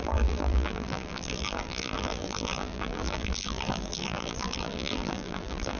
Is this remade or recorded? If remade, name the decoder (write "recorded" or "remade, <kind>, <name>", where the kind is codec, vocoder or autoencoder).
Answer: remade, vocoder, BigVGAN v2